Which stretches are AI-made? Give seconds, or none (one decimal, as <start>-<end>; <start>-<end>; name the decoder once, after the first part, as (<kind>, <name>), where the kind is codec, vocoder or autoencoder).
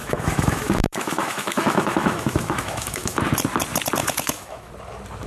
0.0-3.2 (autoencoder, DAC-VAE); 4.0-4.7